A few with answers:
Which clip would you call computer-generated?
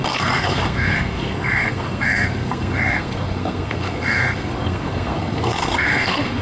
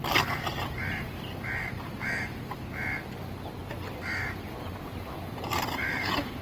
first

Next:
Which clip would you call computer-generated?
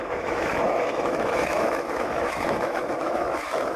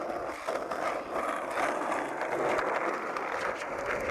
first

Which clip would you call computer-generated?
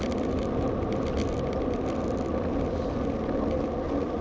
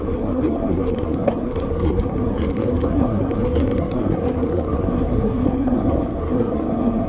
second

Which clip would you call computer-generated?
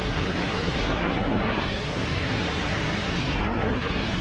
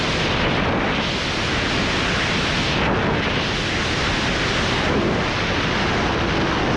first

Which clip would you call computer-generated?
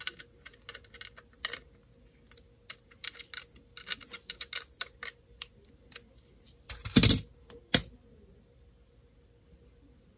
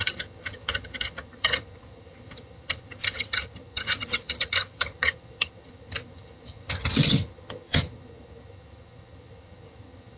second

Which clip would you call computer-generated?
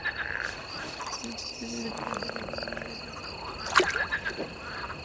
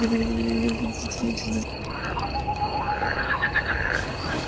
second